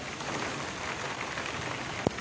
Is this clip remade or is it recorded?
recorded